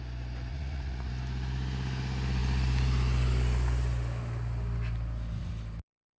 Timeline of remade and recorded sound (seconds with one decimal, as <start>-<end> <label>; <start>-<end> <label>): 0.0-0.5 recorded; 0.5-1.1 remade; 1.1-6.2 recorded